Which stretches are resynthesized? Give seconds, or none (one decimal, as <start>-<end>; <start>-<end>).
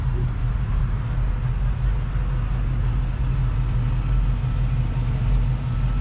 0.4-1.3